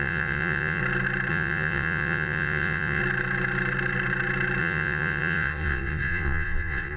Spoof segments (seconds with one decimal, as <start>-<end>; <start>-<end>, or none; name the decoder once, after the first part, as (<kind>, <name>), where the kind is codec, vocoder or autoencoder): 0.0-0.8 (vocoder, Vocos); 1.3-3.0; 4.6-7.0